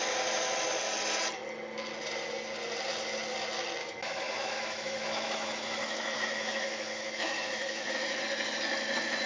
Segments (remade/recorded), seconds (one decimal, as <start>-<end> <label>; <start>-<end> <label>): 0.0-3.8 recorded; 3.8-8.2 remade; 8.2-9.3 recorded